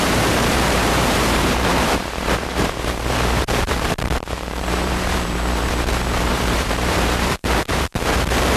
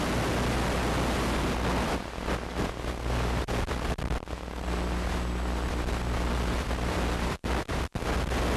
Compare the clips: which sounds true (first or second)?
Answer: second